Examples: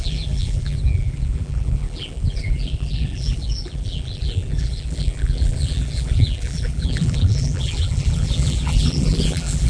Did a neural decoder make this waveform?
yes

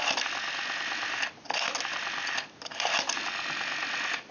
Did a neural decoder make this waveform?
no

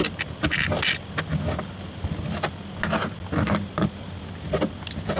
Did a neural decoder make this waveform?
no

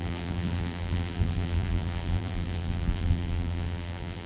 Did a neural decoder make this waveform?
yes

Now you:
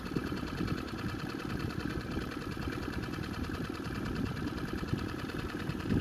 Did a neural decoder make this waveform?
yes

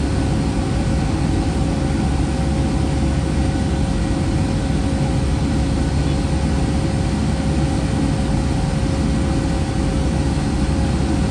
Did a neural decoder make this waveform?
no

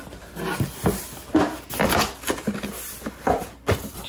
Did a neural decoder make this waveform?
no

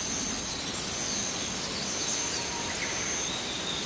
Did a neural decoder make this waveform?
yes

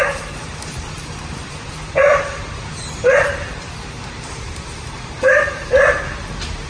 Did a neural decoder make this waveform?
yes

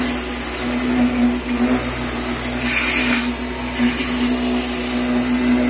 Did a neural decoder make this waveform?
no